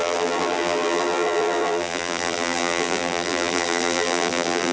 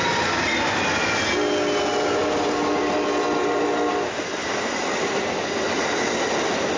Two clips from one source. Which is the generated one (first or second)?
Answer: first